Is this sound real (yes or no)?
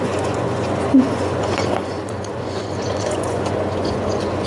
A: no